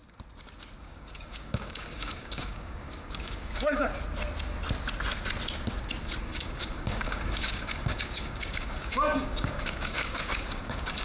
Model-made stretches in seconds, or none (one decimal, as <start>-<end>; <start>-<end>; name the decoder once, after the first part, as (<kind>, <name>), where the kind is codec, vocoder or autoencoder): 0.8-3.9 (codec, DAC); 6.2-11.0